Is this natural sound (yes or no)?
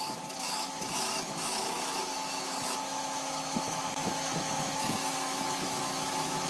no